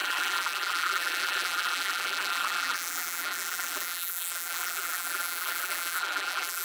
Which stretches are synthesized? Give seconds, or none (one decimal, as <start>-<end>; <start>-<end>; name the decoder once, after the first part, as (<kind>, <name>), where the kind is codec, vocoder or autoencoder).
0.0-6.6 (vocoder, BigVGAN v2)